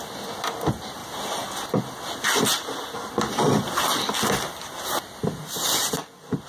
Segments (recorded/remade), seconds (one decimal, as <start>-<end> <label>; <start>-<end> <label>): 0.0-6.5 recorded